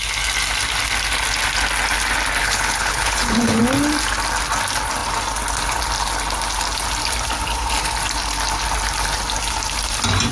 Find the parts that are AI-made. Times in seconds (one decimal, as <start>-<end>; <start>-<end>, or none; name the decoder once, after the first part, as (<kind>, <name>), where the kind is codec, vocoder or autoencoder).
2.4-3.6 (codec, HILCodec)